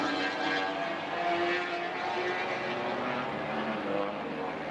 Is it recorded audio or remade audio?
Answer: recorded